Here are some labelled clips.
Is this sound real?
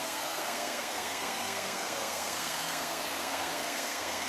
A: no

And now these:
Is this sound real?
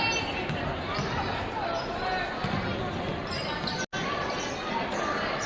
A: yes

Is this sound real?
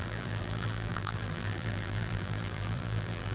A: no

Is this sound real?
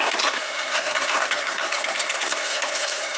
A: no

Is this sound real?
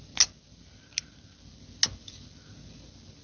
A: yes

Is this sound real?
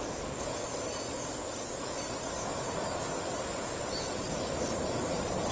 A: yes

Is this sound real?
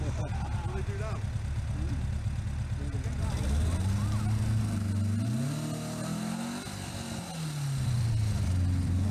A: yes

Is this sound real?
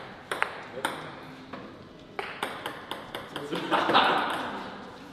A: yes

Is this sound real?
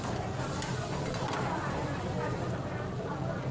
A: yes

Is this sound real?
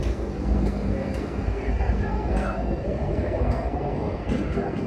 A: no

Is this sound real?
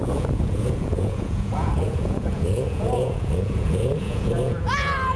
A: no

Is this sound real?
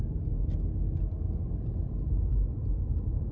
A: yes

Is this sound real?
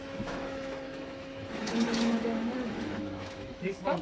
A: no